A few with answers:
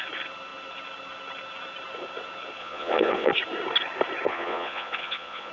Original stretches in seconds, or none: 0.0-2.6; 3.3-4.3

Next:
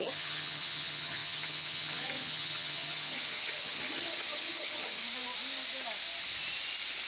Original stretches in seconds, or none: 5.0-7.1

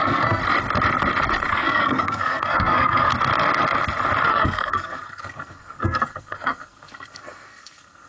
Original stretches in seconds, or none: 0.4-1.5; 3.1-4.3

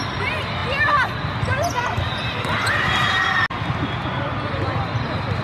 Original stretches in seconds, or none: 0.0-5.4